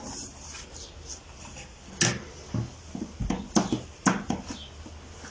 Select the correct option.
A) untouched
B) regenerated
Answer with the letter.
A